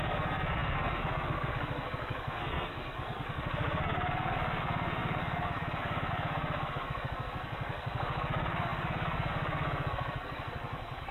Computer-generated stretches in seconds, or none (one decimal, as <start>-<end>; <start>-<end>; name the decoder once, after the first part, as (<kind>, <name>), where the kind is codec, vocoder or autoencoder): 0.0-11.1 (codec, SNAC)